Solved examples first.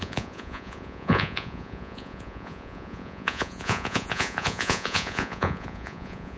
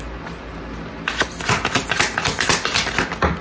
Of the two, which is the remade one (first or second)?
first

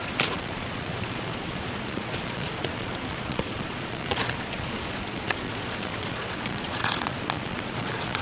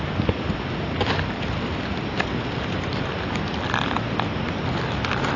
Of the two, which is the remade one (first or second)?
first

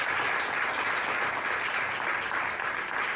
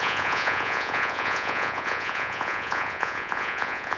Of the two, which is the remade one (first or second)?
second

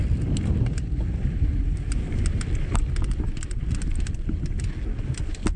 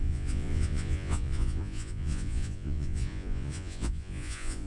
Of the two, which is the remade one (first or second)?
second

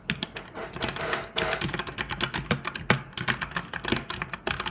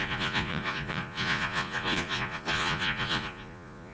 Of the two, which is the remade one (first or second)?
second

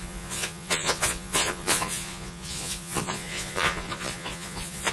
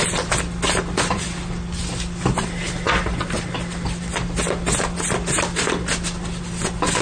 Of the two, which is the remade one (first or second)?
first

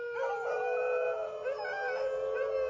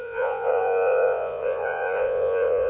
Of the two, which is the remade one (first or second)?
second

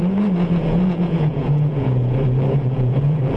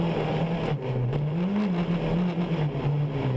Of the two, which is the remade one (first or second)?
first